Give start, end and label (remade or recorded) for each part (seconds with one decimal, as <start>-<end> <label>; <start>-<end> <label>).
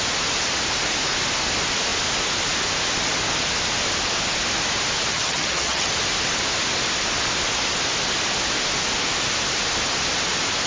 0.0-5.1 recorded; 5.1-5.9 remade; 5.9-10.7 recorded